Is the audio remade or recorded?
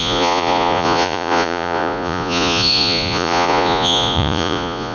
remade